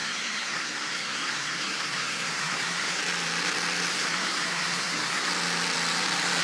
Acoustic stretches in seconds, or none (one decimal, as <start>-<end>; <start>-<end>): 3.0-3.9; 5.3-6.4